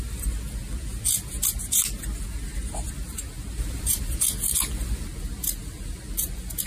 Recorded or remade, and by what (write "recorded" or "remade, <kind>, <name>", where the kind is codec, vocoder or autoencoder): recorded